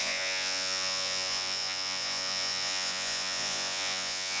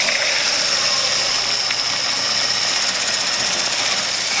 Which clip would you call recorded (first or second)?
second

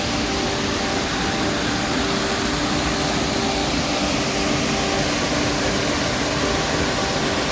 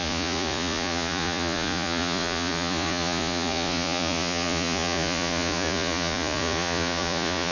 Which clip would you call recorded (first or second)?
first